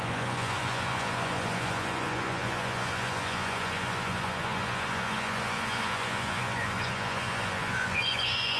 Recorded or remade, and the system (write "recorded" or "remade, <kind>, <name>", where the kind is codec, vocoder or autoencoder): remade, vocoder, Vocos